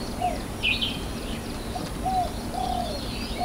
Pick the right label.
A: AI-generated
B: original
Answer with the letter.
B